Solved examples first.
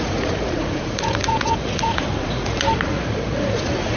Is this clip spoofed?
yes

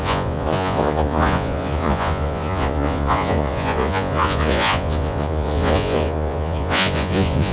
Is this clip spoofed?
yes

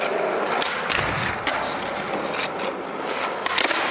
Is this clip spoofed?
no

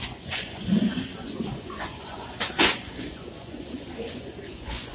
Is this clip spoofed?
yes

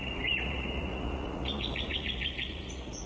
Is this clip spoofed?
yes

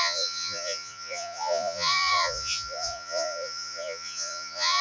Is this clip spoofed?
yes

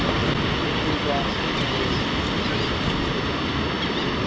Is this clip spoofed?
no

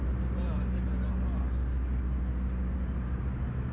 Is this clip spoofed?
no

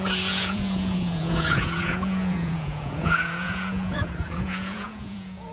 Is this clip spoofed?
yes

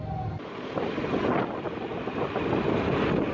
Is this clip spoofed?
no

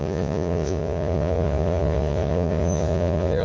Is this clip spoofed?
yes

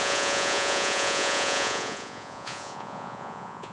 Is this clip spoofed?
yes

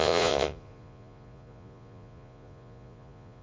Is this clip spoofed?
yes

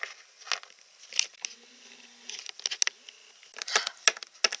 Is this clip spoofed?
no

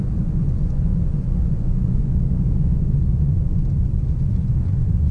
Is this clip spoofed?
yes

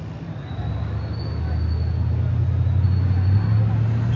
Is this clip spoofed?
no